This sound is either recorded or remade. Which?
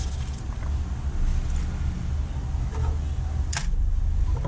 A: recorded